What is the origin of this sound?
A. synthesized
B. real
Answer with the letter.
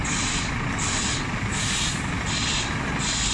B